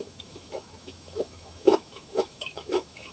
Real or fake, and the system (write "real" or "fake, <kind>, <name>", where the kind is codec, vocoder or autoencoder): fake, autoencoder, DAC-VAE